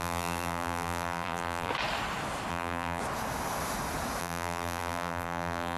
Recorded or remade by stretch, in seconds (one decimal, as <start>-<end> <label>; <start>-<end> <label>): 0.0-1.7 remade; 1.7-2.5 recorded; 2.5-3.0 remade; 3.0-4.2 recorded; 4.2-5.8 remade